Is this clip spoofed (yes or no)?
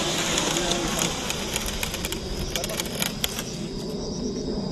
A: no